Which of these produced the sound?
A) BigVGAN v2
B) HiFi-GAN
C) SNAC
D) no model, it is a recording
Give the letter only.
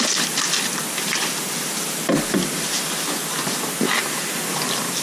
A